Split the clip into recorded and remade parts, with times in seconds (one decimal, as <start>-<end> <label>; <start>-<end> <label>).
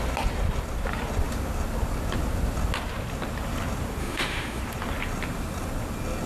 0.0-4.0 recorded; 4.0-4.6 remade; 4.6-6.3 recorded